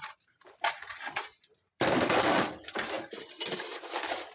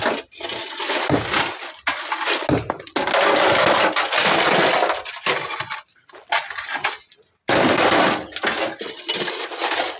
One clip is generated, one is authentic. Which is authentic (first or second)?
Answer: second